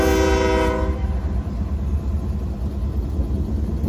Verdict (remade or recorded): recorded